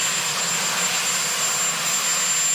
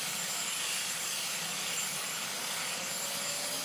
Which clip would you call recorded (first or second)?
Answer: first